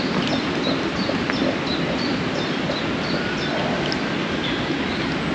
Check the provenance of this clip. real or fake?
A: real